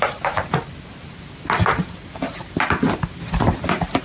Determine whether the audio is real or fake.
real